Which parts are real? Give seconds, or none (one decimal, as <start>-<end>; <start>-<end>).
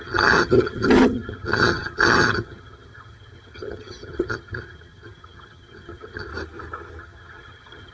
6.3-7.0